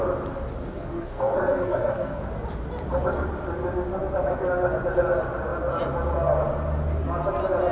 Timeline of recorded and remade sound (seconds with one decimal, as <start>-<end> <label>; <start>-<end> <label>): 0.0-0.6 recorded; 0.6-2.2 remade; 2.2-7.7 recorded